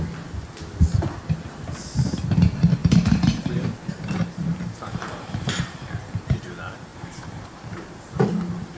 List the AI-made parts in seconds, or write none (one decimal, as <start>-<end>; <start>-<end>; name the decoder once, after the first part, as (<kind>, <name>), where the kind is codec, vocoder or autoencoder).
2.8-6.5 (vocoder, BigVGAN v2); 6.9-8.3